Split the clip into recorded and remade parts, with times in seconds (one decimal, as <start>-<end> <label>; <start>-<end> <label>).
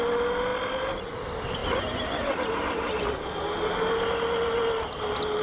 0.0-5.4 recorded